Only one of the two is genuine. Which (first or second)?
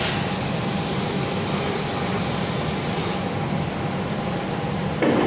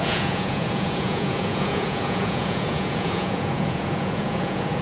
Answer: first